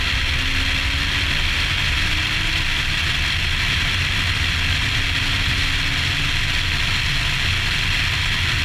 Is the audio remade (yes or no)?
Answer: no